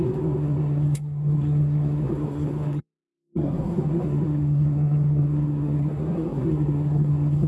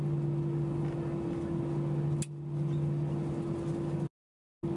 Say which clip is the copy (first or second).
first